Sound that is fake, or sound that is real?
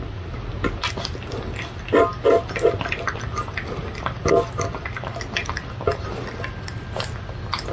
real